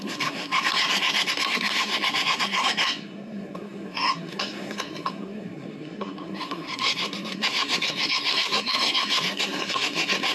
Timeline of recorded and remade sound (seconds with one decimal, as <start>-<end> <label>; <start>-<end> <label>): 0.0-10.3 remade